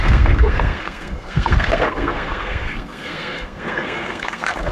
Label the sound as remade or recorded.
remade